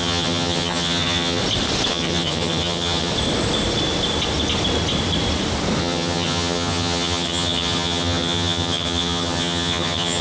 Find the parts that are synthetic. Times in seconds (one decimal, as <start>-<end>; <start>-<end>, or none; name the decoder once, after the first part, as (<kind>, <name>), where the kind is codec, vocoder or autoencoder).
0.0-1.4 (vocoder, HiFi-GAN); 1.9-3.1; 5.8-10.2